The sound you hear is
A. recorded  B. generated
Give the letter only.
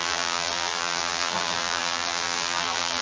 B